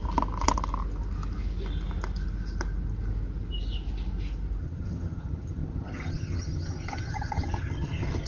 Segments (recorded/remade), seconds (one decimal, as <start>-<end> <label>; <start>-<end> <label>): 0.0-4.6 recorded; 4.6-8.3 remade